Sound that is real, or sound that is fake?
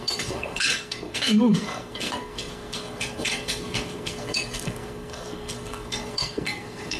fake